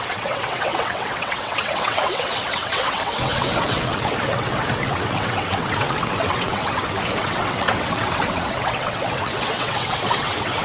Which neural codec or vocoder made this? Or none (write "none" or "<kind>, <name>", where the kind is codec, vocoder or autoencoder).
vocoder, WaveNeXt